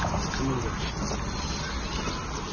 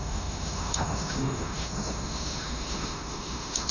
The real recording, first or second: first